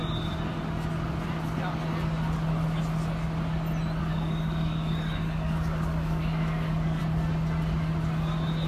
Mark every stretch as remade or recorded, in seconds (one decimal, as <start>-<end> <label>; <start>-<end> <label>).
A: 0.0-4.0 recorded; 4.0-7.0 remade; 7.0-8.7 recorded